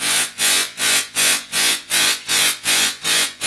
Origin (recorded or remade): remade